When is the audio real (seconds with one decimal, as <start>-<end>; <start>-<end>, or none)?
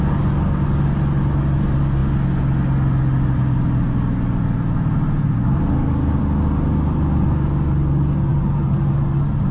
0.0-8.3; 8.9-9.5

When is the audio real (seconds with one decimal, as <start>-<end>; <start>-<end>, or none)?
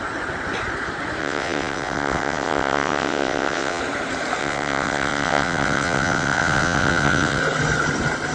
0.0-1.2; 3.8-4.4; 7.4-8.3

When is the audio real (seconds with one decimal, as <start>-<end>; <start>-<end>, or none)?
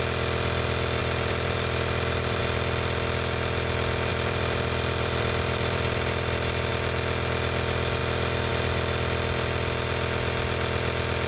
0.0-1.0; 2.4-4.1; 6.7-11.3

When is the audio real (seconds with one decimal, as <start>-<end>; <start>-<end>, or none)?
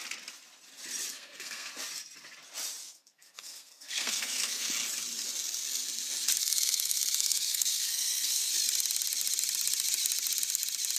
0.0-1.1; 1.7-2.8; 4.7-6.4; 8.5-11.0